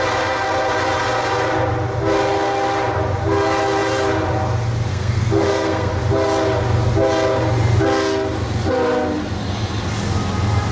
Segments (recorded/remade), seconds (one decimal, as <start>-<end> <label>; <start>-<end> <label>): 0.0-4.9 recorded; 4.9-5.9 remade; 5.9-10.7 recorded